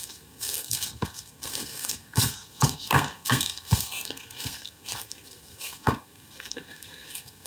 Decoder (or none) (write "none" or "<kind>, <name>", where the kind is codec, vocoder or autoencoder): codec, SNAC